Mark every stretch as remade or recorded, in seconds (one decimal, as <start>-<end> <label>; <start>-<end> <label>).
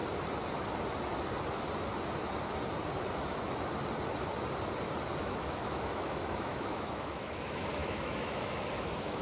0.0-5.2 recorded; 5.2-9.2 remade